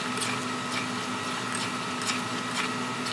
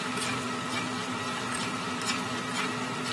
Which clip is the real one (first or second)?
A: first